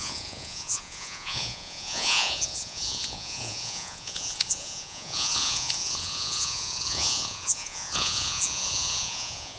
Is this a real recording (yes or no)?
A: no